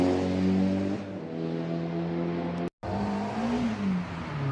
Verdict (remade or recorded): recorded